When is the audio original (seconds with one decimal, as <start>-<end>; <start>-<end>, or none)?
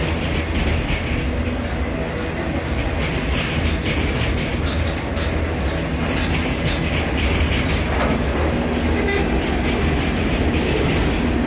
0.0-11.5